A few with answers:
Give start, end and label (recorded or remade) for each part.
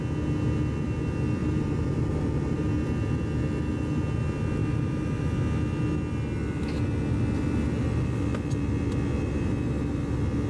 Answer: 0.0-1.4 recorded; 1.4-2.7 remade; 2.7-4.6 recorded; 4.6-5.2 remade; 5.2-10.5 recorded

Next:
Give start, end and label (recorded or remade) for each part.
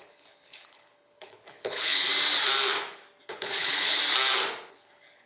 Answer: 0.0-2.1 remade; 2.1-3.2 recorded; 3.2-4.0 remade; 4.0-4.7 recorded; 4.7-5.3 remade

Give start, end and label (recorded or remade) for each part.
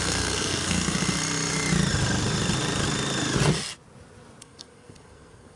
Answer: 0.0-1.0 remade; 1.0-4.4 recorded; 4.4-5.6 remade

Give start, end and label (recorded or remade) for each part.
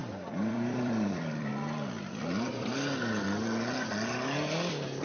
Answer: 0.0-1.5 remade; 1.5-5.0 recorded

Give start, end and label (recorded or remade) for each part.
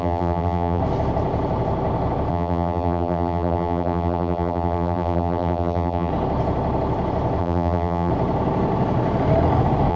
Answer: 0.0-0.8 remade; 0.8-2.3 recorded; 2.3-6.1 remade; 6.1-7.4 recorded; 7.4-8.1 remade; 8.1-9.9 recorded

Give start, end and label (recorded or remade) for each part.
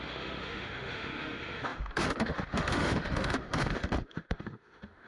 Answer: 0.0-5.1 remade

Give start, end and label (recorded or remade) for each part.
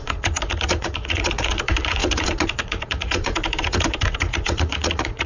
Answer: 0.0-5.3 remade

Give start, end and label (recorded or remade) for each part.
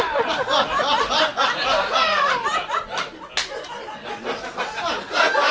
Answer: 0.0-5.5 recorded